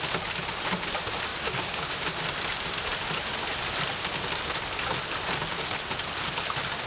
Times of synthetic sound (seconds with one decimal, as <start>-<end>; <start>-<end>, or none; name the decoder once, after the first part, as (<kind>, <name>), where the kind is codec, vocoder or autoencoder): 1.3-1.9 (codec, DAC)